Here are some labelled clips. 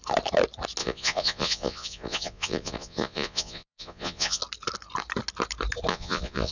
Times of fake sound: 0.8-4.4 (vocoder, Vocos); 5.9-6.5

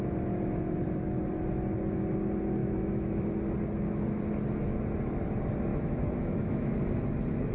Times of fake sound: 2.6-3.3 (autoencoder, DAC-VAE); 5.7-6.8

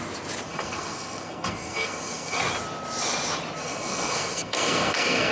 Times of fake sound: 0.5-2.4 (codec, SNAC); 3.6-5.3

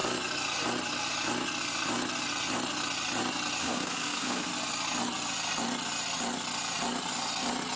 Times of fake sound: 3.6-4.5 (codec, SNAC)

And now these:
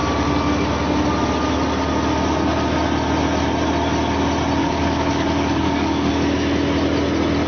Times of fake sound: 4.6-6.1 (codec, DAC)